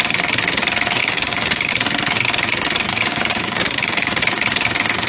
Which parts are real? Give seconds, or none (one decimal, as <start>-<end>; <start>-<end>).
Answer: 0.0-1.0; 1.7-2.9; 4.2-5.1